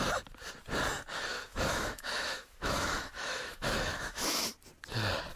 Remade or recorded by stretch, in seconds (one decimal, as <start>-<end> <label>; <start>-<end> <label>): 0.0-1.3 recorded; 1.3-4.5 remade; 4.5-5.4 recorded